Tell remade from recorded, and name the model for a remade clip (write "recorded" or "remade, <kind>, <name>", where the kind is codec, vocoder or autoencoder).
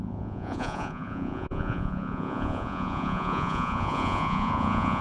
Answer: remade, vocoder, Vocos